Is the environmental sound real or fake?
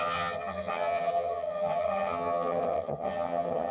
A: fake